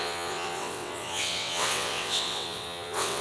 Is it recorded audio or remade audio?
remade